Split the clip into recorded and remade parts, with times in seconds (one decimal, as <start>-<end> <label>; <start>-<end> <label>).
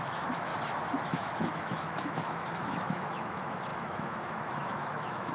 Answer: 0.0-0.5 remade; 0.5-1.1 recorded; 1.1-5.3 remade